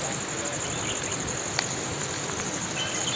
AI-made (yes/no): no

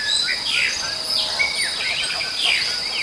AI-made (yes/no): no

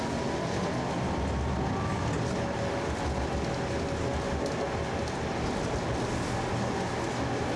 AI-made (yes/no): no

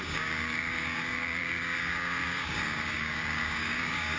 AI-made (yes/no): yes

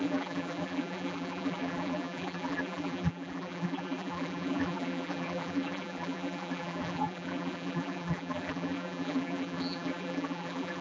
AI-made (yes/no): yes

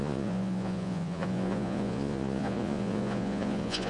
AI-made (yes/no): yes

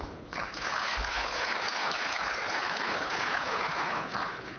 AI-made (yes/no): yes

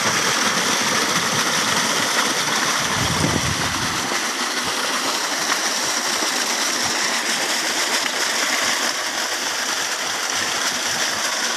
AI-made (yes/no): no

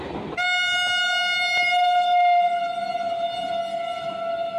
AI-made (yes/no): no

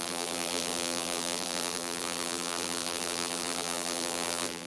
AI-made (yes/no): yes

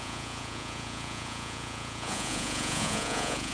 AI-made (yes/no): yes